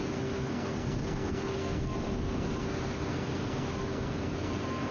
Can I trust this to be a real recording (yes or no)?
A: no